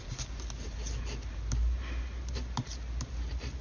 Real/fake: real